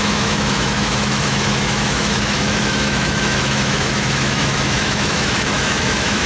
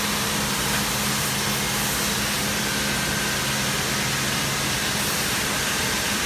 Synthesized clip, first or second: first